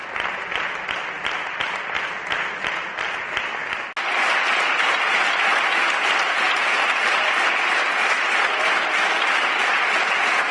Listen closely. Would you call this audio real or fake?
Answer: real